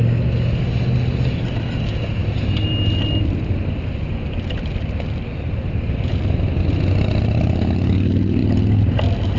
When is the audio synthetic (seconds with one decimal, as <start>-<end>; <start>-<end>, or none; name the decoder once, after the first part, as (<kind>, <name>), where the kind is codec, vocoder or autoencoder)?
none